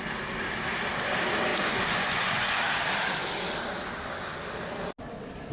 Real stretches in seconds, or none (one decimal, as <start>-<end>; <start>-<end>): 0.0-1.5; 2.6-5.5